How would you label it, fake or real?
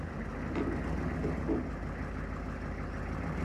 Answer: real